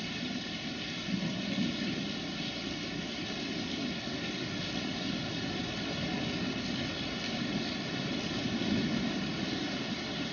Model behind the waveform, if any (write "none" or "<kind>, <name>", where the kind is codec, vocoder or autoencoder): none